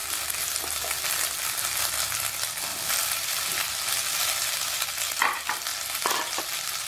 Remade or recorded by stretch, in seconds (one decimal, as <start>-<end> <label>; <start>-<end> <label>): 0.0-0.6 remade; 0.6-2.7 recorded; 2.7-4.5 remade; 4.5-6.9 recorded